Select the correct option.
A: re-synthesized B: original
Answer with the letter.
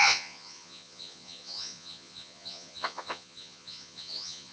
A